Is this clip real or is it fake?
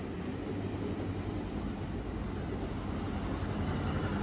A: real